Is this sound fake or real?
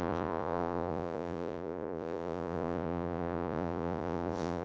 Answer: fake